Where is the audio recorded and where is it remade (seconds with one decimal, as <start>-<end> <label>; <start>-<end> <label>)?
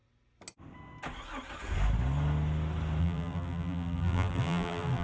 0.0-3.0 recorded; 3.0-5.0 remade